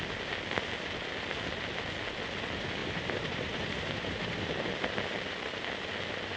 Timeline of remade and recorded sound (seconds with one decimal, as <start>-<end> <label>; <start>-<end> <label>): 0.0-2.8 recorded; 2.8-4.5 remade; 4.5-6.4 recorded